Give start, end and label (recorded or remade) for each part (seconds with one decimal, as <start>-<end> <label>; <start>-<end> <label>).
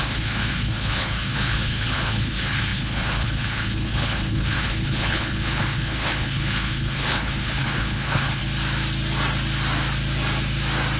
0.0-8.4 remade; 8.4-11.0 recorded